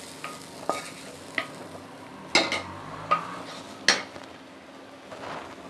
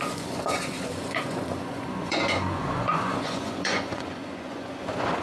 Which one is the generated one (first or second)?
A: second